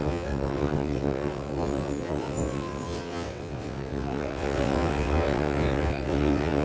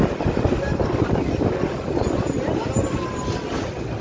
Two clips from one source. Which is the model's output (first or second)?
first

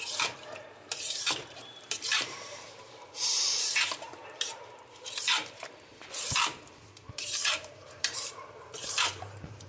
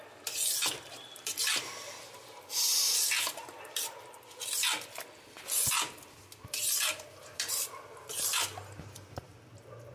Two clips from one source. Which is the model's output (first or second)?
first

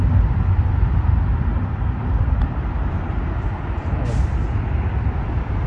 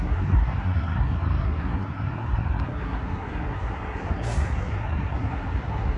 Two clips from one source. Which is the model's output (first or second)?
second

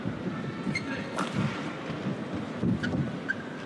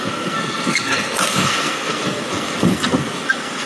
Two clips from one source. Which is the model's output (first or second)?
second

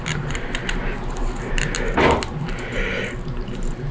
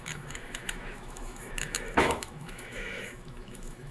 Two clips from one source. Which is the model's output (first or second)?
second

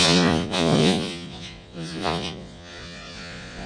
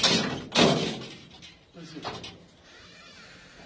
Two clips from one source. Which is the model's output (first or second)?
first